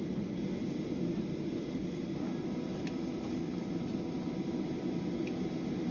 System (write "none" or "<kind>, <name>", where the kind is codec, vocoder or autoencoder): none